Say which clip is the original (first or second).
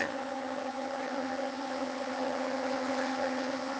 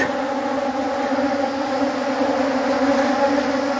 second